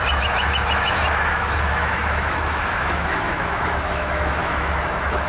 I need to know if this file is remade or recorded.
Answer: remade